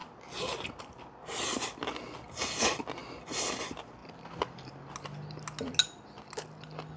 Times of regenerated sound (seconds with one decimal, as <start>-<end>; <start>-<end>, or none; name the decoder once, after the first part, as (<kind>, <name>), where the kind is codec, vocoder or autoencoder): none